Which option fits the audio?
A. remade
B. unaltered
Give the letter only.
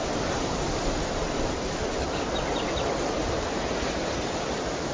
B